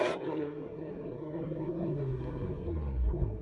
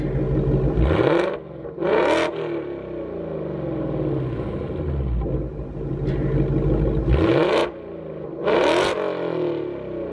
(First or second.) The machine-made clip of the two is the first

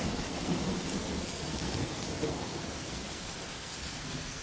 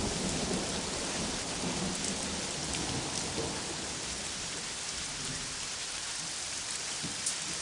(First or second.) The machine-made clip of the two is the first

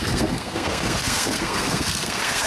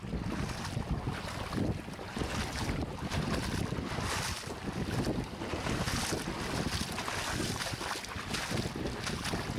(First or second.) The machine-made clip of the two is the first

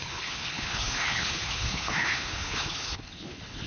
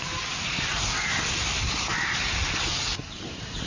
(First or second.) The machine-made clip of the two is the first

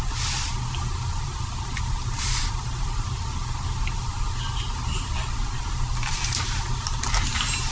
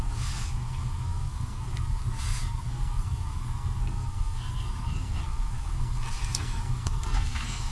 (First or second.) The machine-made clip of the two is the second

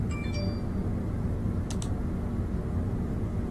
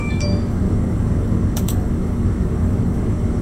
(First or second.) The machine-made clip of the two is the second